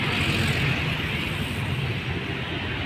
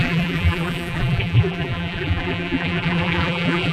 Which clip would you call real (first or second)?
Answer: first